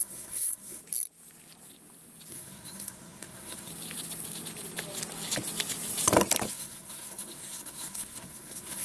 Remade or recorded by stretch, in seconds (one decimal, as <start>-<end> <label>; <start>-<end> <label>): 0.0-0.8 remade; 0.8-2.3 recorded; 2.3-3.7 remade; 3.7-6.5 recorded; 6.5-8.8 remade